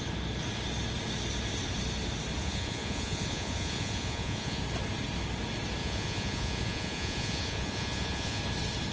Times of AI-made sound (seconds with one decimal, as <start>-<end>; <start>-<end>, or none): 2.4-4.6; 5.8-8.4